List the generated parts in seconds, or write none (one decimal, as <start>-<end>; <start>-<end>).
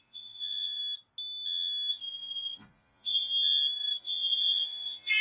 0.0-0.8; 1.9-3.3; 4.0-5.2